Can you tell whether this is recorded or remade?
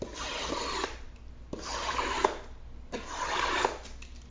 recorded